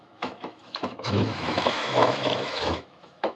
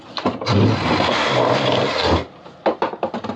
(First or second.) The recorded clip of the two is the second